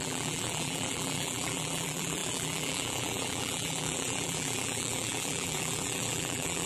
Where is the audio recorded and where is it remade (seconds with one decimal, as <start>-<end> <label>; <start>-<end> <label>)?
0.0-6.7 remade